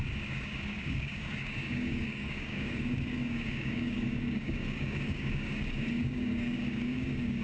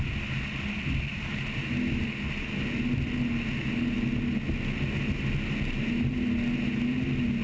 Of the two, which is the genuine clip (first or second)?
second